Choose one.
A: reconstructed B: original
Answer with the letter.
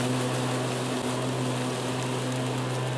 B